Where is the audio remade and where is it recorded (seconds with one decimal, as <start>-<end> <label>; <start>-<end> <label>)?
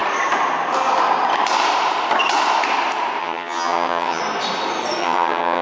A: 0.0-3.2 recorded; 3.2-4.2 remade; 4.2-5.0 recorded; 5.0-5.6 remade